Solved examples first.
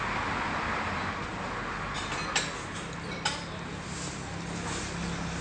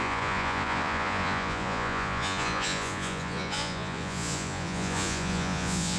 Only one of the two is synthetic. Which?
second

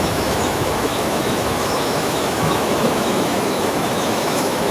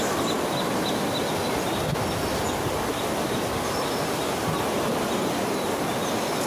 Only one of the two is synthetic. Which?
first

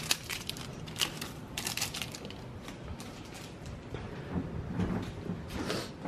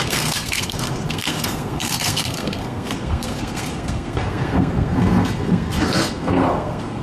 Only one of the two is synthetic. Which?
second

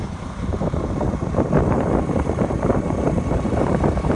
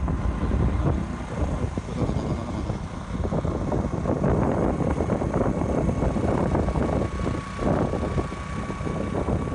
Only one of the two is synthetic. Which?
first